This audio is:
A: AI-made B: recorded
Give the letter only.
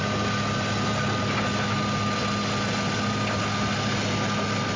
B